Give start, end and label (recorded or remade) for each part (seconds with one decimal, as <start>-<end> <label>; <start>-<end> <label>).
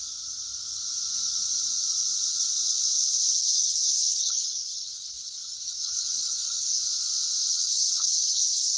0.0-3.4 recorded; 3.4-6.8 remade; 6.8-7.5 recorded; 7.5-8.8 remade